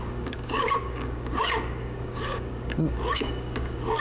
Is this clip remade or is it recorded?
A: remade